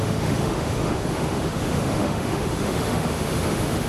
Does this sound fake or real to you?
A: fake